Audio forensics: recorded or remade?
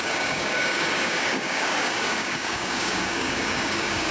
remade